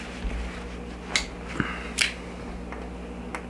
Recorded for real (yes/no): yes